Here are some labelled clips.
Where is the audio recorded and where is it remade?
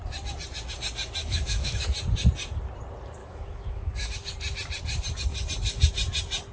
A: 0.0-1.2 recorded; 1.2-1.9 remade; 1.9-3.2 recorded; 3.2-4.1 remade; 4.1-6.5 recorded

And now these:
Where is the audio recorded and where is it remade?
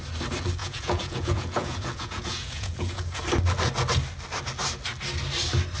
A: 0.0-0.6 recorded; 0.6-3.2 remade; 3.2-5.8 recorded